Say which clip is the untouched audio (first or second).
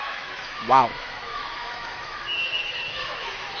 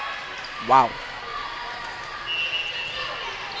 second